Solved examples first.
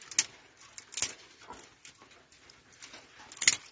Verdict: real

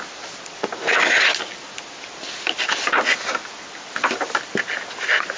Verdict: real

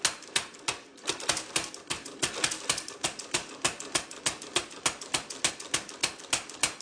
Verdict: real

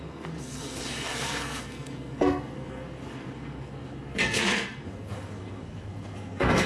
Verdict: fake